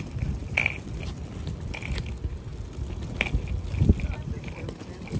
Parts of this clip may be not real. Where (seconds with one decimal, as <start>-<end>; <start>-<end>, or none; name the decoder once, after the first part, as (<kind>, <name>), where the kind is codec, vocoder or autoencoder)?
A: none